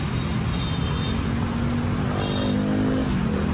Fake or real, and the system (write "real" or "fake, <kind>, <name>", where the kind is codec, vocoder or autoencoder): real